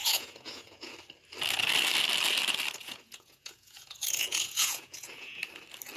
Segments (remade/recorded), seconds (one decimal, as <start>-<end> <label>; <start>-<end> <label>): 0.0-0.9 remade; 0.9-2.8 recorded; 2.8-5.4 remade; 5.4-6.0 recorded